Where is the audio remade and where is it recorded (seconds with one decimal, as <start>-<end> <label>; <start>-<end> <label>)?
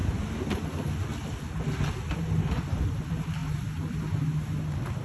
0.0-5.0 recorded